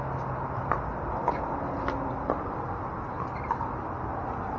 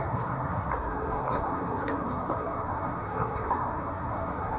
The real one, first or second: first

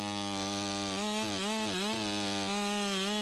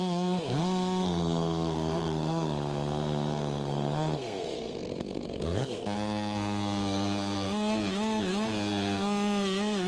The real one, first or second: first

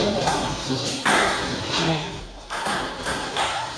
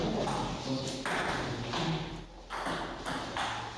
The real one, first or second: second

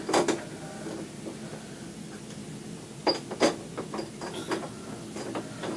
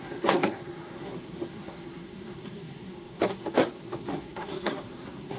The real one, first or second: first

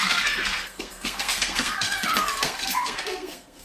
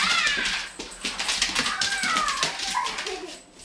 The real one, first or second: second